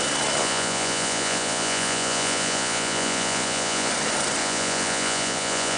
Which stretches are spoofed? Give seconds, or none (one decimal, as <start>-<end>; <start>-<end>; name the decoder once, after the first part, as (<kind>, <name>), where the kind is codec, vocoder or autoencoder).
0.4-3.9 (vocoder, Vocos); 4.4-5.8